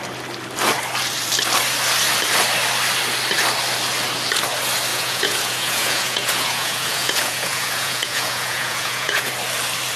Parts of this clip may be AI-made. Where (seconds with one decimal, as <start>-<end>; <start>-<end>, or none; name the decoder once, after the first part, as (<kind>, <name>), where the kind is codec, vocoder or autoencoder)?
4.9-9.3 (vocoder, Vocos)